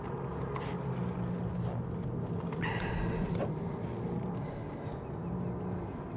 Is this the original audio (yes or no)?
yes